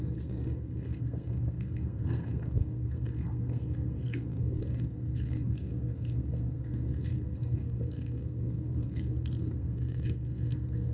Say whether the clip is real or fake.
fake